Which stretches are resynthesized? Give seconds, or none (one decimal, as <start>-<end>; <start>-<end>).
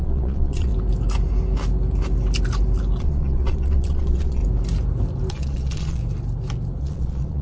0.0-0.7; 3.0-4.4; 5.3-6.0; 6.8-7.4